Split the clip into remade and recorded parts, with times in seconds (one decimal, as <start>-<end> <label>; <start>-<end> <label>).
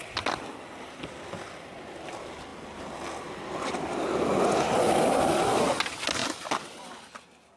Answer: 0.0-7.6 recorded